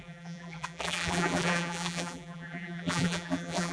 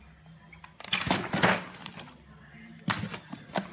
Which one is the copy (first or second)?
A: first